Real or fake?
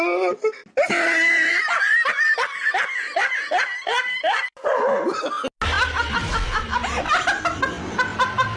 real